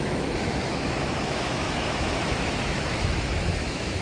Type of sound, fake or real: fake